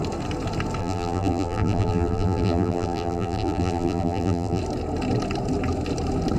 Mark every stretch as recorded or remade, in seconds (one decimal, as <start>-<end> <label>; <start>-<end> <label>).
0.0-0.8 recorded; 0.8-4.6 remade; 4.6-6.4 recorded